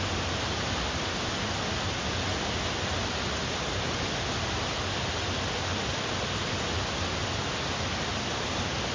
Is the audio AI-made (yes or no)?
no